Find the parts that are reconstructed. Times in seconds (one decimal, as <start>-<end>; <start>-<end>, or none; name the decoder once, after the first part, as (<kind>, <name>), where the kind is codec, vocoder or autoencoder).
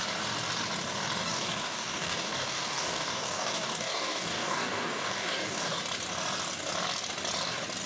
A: 1.2-5.8 (codec, DAC)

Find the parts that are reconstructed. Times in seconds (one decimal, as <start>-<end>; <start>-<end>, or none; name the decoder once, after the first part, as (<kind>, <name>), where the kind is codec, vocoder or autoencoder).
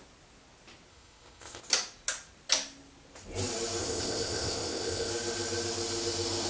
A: 0.9-1.6 (codec, ZipCodec); 3.8-5.1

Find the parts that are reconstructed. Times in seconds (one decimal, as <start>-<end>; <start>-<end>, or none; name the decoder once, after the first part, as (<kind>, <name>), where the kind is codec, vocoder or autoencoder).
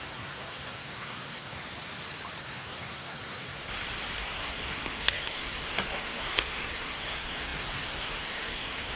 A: 0.0-1.6 (codec, SNAC); 2.4-3.7; 4.2-9.0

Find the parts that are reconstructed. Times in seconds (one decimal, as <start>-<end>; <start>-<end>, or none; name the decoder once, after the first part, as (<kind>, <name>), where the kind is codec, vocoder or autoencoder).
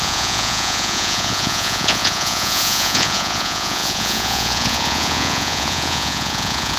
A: 0.0-6.8 (vocoder, Vocos)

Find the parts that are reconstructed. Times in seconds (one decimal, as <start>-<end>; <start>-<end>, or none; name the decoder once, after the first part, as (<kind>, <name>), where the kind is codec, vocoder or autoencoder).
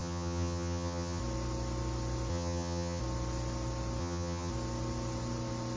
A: 0.0-1.2 (vocoder, HiFi-GAN); 2.3-3.0; 4.0-4.5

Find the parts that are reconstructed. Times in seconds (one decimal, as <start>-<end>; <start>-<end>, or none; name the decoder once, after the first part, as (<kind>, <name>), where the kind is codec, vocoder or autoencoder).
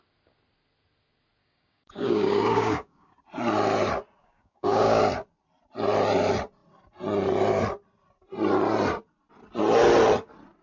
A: 1.4-3.1 (codec, DAC); 4.2-5.0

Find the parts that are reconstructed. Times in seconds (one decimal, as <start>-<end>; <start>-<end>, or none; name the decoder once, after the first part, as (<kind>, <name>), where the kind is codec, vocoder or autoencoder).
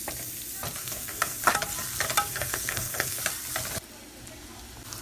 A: 0.8-1.4 (codec, SNAC); 2.3-3.2